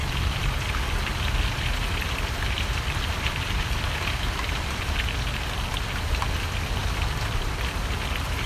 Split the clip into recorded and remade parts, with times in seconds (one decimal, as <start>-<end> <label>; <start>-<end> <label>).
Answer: 0.0-4.8 remade; 4.8-8.5 recorded